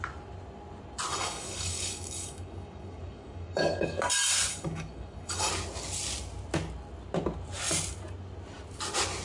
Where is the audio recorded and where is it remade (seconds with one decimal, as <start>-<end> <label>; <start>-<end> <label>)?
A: 0.0-1.1 recorded; 1.1-4.0 remade; 4.0-4.5 recorded; 4.5-5.5 remade; 5.5-9.2 recorded